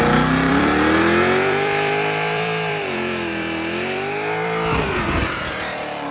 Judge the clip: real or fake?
fake